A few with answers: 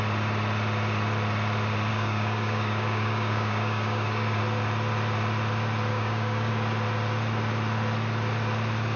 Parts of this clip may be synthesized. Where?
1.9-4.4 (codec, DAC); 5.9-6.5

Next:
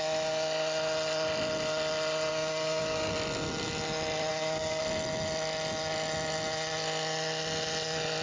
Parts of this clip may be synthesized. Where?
2.3-3.1 (codec, DAC); 4.3-4.8

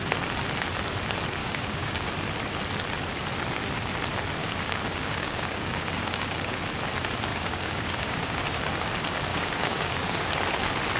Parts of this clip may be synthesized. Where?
1.4-2.1 (codec, DAC); 4.4-6.6; 7.3-8.4; 9.3-10.3

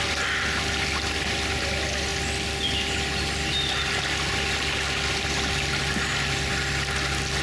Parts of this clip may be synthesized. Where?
none

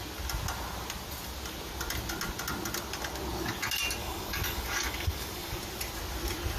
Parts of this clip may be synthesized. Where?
4.0-5.6 (codec, DAC)

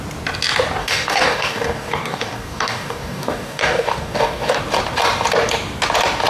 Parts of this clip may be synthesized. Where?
0.8-4.6 (codec, DAC)

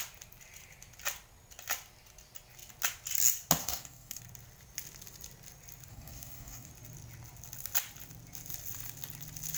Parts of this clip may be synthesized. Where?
3.6-4.2 (codec, DAC); 5.9-6.7

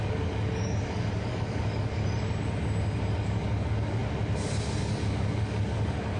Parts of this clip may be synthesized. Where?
0.0-2.0 (codec, DAC); 3.1-4.0; 4.8-6.2